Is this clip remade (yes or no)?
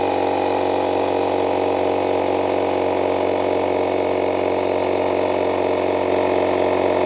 no